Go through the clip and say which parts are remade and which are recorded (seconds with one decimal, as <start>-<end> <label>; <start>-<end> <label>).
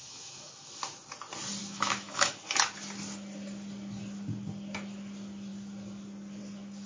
0.0-0.8 remade; 0.8-1.6 recorded; 1.6-2.4 remade; 2.4-6.9 recorded